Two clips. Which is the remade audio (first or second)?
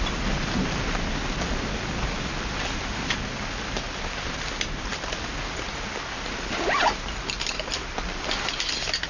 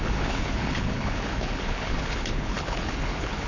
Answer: second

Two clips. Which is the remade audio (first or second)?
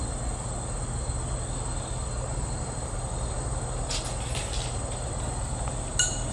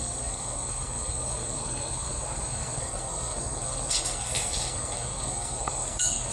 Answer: second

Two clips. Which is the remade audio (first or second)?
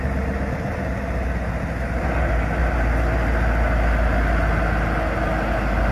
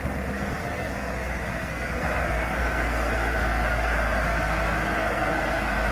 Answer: second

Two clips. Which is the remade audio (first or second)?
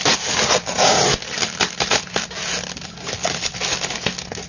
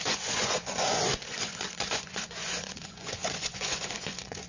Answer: second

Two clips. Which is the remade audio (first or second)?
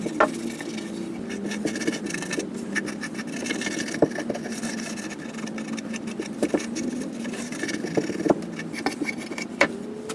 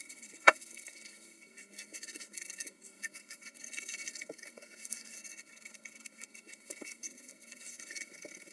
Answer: second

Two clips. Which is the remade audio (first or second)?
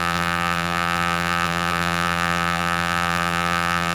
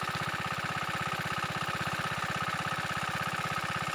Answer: first